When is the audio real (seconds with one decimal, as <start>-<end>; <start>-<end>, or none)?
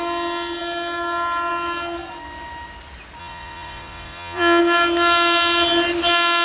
0.0-3.2; 4.6-6.4